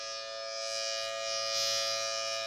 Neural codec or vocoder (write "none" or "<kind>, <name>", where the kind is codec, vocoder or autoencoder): none